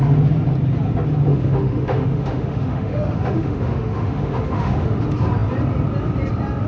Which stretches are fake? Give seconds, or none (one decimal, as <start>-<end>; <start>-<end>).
1.3-5.0